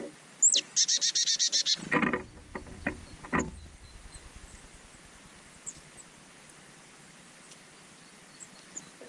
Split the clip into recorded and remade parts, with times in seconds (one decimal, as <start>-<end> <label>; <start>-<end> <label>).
0.0-9.1 recorded